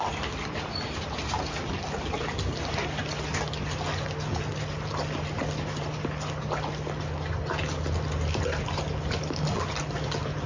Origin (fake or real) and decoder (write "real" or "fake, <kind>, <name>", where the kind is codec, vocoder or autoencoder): real